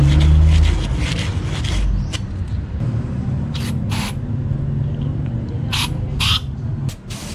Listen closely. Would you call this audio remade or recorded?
recorded